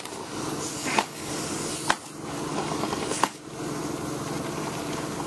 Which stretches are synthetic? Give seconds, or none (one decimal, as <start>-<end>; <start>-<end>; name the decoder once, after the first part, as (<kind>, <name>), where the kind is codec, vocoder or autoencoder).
0.8-1.3 (codec, DAC); 2.5-3.4